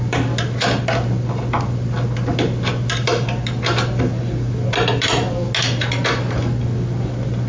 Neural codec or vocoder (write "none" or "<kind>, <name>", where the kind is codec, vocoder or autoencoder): none